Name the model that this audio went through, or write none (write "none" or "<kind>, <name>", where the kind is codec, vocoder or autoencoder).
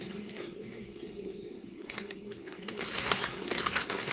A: codec, SNAC